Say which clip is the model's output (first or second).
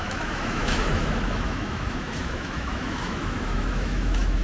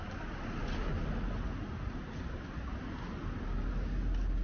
first